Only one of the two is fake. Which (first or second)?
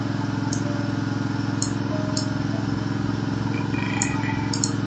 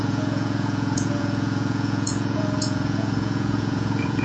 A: second